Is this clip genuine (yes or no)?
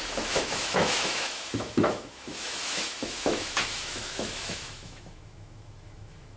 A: no